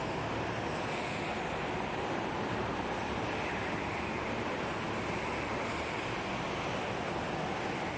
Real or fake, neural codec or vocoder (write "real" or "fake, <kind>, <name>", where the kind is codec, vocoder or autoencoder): real